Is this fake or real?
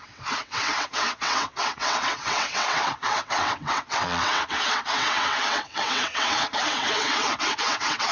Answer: fake